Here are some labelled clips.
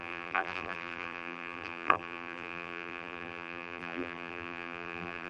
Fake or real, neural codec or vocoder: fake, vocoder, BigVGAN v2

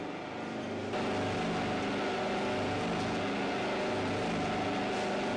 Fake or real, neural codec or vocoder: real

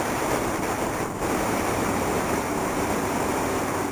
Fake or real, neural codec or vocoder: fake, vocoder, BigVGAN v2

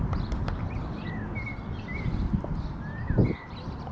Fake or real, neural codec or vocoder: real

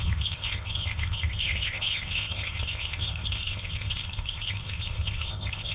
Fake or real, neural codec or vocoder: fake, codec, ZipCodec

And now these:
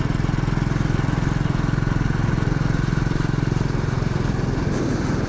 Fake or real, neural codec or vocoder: real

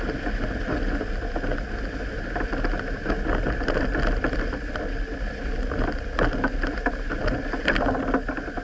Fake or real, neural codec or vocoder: real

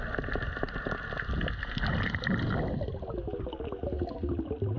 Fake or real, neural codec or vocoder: real